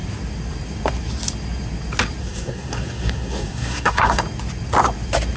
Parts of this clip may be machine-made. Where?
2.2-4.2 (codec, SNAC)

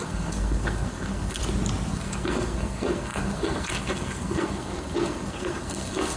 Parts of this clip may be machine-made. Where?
0.0-1.4 (codec, SNAC); 1.9-6.2

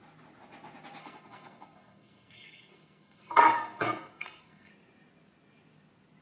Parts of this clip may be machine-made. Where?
1.0-4.7 (codec, SNAC)

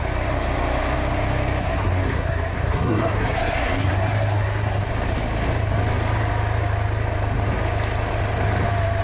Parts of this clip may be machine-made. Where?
1.6-4.9 (codec, SNAC)

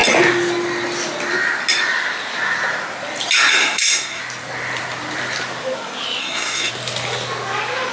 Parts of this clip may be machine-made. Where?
3.5-4.2 (codec, SNAC); 6.2-6.7

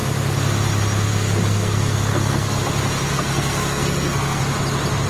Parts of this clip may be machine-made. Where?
1.1-2.6 (codec, SNAC); 3.1-4.4

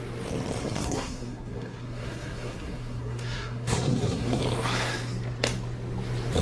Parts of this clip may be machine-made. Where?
0.6-4.4 (codec, SNAC)

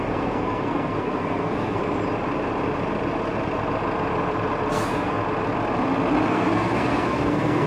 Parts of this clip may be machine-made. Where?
0.0-1.8 (codec, SNAC); 4.7-5.2; 6.3-7.7